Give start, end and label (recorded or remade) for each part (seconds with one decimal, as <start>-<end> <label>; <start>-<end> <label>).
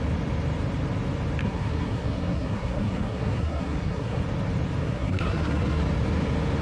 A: 0.0-1.4 recorded; 1.4-4.2 remade; 4.2-4.8 recorded; 4.8-5.8 remade; 5.8-6.6 recorded